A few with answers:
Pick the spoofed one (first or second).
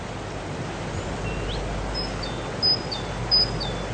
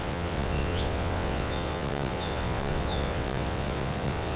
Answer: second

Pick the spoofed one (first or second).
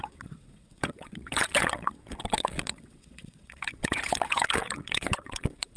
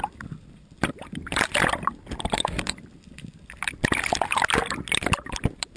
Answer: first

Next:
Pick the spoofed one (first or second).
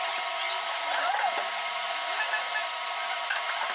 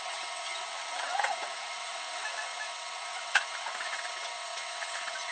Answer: second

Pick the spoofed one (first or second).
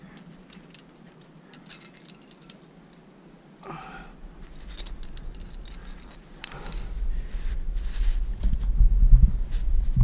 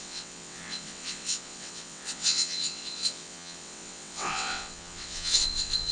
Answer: second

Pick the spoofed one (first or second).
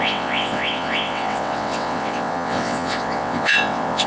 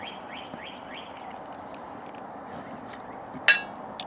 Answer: first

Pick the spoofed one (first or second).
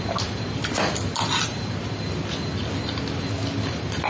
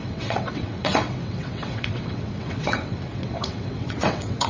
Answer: second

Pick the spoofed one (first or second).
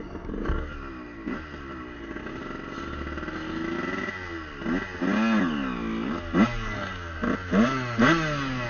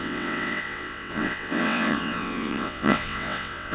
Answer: second